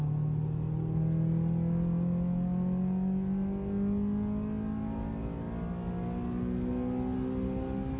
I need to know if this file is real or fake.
real